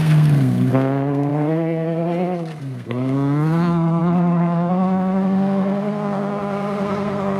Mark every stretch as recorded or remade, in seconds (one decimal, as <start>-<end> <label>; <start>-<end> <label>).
0.0-7.4 remade